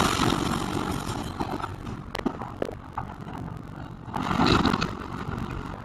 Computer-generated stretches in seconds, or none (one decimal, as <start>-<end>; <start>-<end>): none